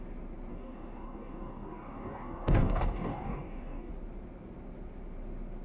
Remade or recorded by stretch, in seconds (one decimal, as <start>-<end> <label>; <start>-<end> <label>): 0.0-0.5 recorded; 0.5-3.9 remade; 3.9-5.6 recorded